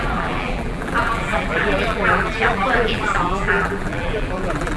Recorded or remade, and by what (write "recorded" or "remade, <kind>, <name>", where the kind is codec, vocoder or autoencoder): remade, vocoder, BigVGAN v2